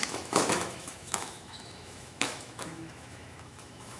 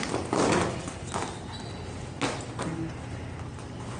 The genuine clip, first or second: second